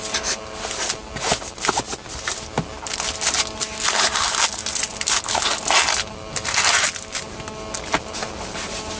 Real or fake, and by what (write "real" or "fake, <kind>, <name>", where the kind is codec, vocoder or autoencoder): real